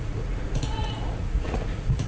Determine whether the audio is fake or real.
fake